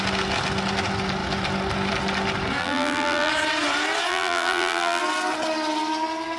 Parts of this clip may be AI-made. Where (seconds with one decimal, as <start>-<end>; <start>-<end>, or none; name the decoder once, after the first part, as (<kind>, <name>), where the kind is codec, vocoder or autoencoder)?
2.6-3.3 (vocoder, BigVGAN v2); 4.1-5.0